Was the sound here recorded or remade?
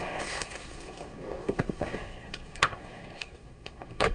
remade